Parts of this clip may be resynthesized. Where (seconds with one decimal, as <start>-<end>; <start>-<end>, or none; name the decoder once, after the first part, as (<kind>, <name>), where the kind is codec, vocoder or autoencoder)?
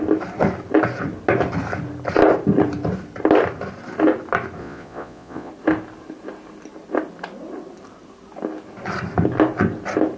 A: 4.6-5.5 (vocoder, Vocos)